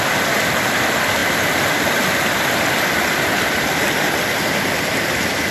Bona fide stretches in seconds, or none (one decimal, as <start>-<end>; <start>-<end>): 0.0-5.5